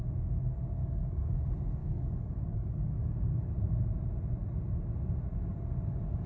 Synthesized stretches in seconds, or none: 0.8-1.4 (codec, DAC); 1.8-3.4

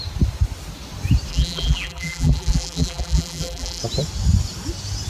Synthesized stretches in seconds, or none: 1.3-3.8 (vocoder, BigVGAN v2)

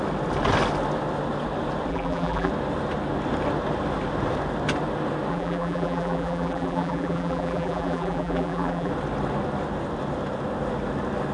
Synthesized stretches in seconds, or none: 1.9-2.5 (vocoder, BigVGAN v2); 5.3-8.9

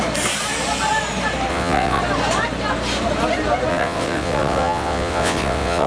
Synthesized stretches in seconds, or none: 1.5-2.0 (vocoder, WaveNeXt); 3.7-5.9

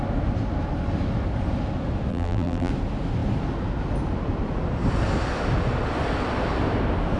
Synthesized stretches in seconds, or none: 2.1-2.7 (vocoder, BigVGAN v2)